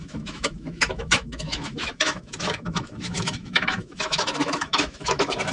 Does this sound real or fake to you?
fake